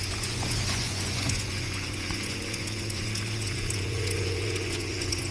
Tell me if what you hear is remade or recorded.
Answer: remade